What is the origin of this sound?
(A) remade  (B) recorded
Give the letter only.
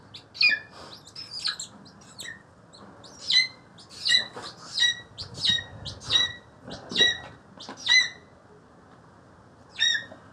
B